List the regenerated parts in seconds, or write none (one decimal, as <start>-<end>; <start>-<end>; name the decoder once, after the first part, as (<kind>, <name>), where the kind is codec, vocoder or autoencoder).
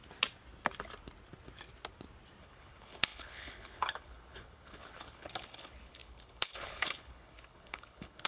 2.4-8.3 (codec, HILCodec)